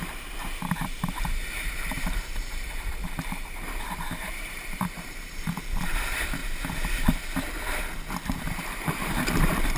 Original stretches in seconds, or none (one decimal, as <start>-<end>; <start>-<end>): 6.4-8.2